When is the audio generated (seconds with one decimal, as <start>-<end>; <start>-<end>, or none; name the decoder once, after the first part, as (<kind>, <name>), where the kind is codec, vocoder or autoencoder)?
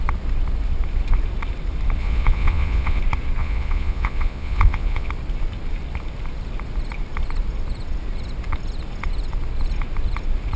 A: 2.0-3.0 (vocoder, Vocos); 3.4-5.1